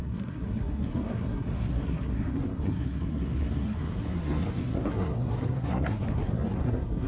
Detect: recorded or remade remade